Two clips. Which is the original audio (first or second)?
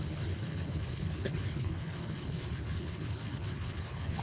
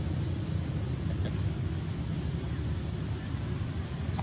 second